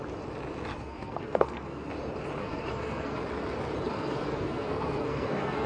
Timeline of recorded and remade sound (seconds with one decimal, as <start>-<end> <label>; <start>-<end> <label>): 0.0-0.7 recorded; 0.7-1.9 remade; 1.9-2.4 recorded; 2.4-3.2 remade; 3.2-3.9 recorded; 3.9-5.7 remade